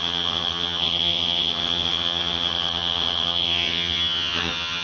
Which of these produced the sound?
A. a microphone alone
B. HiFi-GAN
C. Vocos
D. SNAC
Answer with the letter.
B